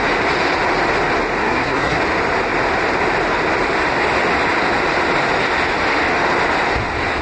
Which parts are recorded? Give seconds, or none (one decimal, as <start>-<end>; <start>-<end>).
0.0-1.4; 2.0-7.2

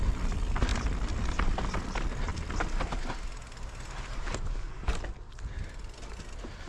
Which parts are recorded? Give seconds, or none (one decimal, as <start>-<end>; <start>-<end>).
0.0-6.7

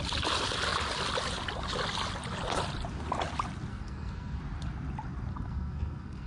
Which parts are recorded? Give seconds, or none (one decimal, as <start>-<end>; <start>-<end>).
0.0-3.7; 4.4-5.3

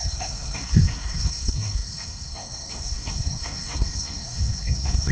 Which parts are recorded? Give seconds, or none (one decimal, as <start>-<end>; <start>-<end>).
none

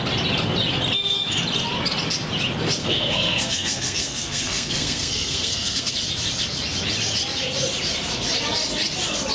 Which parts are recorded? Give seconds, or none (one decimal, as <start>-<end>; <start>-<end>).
0.0-2.8; 5.9-9.3

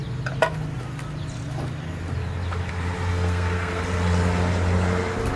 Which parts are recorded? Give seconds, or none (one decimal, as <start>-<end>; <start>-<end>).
0.0-3.1; 3.8-5.4